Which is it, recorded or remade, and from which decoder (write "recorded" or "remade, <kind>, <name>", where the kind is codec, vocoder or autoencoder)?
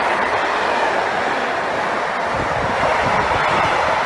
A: recorded